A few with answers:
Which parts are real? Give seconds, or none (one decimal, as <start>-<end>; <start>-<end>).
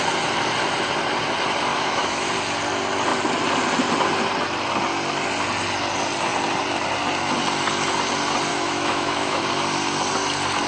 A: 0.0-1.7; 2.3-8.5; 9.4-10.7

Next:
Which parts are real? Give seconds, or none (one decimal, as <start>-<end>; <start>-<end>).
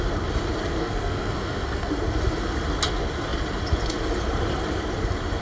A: 0.0-0.8; 1.9-5.4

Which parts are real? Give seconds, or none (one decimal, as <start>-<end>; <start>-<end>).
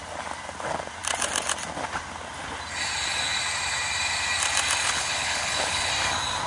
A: 0.0-4.8; 5.9-6.5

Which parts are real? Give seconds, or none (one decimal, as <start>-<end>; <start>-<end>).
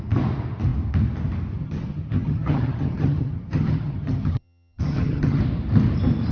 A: 0.0-1.6; 5.4-6.3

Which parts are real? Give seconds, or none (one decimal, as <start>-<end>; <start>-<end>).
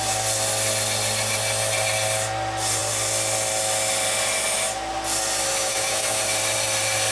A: 0.0-5.5; 6.2-7.1